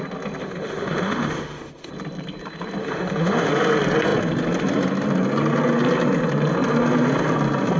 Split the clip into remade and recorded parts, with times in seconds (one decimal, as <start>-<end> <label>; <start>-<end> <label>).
0.0-0.4 recorded; 0.4-1.9 remade; 1.9-2.8 recorded; 2.8-3.5 remade; 3.5-7.8 recorded